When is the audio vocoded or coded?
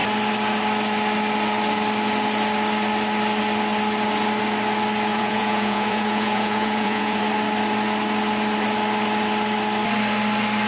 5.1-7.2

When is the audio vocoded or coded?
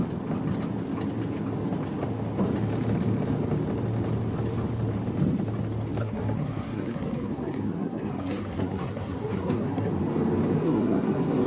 6.0-9.9; 10.6-11.5